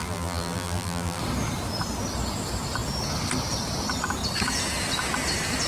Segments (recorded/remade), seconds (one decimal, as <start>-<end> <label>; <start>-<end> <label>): 0.0-1.2 remade; 1.2-5.7 recorded